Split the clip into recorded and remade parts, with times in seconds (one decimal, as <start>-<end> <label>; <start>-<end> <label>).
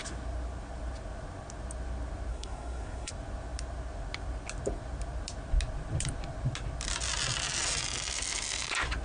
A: 0.0-2.3 recorded; 2.3-3.1 remade; 3.1-9.0 recorded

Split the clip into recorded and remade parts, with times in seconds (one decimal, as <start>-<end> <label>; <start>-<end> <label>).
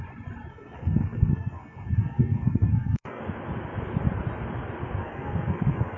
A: 0.0-0.5 recorded; 0.5-3.2 remade; 3.2-5.0 recorded; 5.0-6.0 remade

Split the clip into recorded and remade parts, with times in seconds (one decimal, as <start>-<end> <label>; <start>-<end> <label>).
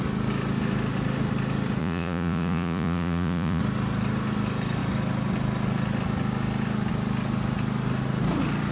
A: 0.0-1.8 recorded; 1.8-3.6 remade; 3.6-8.7 recorded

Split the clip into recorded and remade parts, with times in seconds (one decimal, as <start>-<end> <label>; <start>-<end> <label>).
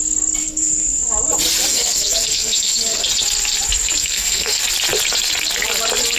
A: 0.0-0.4 recorded; 0.4-1.0 remade; 1.0-1.7 recorded; 1.7-3.0 remade; 3.0-4.0 recorded; 4.0-4.6 remade; 4.6-6.2 recorded